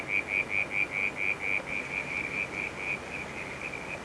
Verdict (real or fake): real